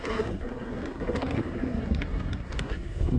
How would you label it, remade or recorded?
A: remade